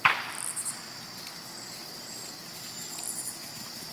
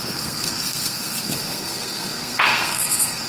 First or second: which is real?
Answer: first